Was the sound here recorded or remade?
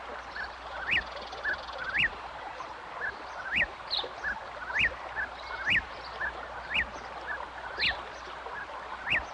recorded